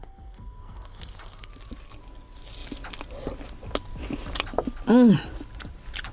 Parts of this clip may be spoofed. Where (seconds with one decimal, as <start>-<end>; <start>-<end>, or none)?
0.0-1.5